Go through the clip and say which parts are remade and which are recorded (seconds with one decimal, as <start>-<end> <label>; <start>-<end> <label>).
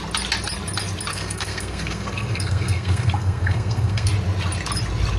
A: 0.0-1.1 recorded; 1.1-4.1 remade; 4.1-5.2 recorded